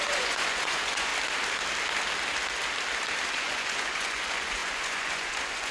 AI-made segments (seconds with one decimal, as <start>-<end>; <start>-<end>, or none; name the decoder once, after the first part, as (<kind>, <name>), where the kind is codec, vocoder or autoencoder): 0.0-1.1 (vocoder, Vocos); 3.3-5.7